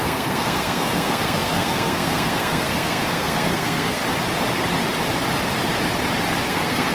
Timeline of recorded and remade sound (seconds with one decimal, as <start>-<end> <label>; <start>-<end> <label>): 0.0-4.0 remade; 4.0-6.5 recorded; 6.5-6.9 remade